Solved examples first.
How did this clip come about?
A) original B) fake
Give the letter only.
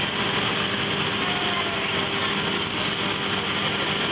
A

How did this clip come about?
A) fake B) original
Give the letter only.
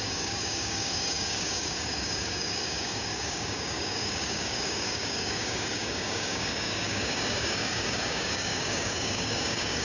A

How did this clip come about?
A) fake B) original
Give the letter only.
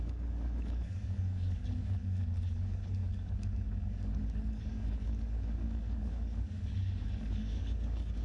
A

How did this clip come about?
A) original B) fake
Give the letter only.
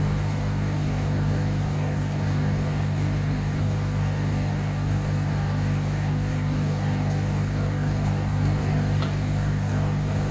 B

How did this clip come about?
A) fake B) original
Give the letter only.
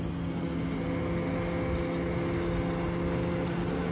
B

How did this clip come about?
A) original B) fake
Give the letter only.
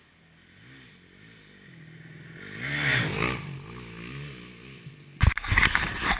A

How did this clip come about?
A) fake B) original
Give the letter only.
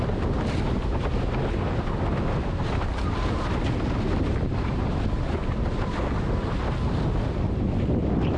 B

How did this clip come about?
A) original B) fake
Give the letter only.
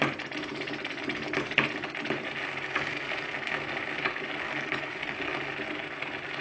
A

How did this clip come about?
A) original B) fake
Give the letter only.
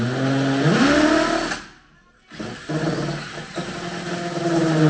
A